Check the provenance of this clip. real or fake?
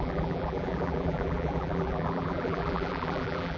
fake